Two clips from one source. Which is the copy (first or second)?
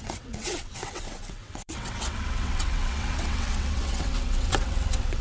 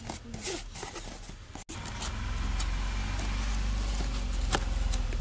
first